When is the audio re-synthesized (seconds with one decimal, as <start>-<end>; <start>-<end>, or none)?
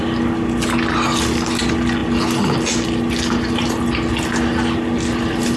none